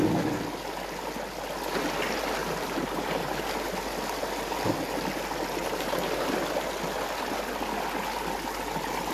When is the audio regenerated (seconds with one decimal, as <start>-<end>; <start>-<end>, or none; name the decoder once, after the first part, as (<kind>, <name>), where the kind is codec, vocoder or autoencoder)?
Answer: 2.4-3.4 (vocoder, BigVGAN v2); 5.6-6.4